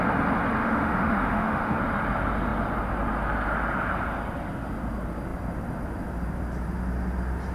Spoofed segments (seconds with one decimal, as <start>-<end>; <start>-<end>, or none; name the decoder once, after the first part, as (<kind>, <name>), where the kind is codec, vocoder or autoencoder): 0.6-1.8 (autoencoder, DAC-VAE)